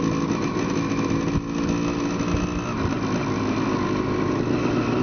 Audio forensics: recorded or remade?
recorded